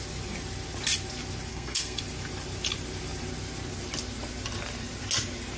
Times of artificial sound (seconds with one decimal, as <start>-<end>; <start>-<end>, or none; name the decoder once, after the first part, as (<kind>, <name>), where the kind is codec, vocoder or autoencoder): 1.5-2.0 (codec, SNAC)